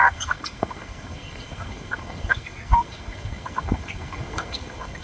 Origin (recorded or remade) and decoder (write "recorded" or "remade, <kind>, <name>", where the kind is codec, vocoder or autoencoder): remade, codec, SNAC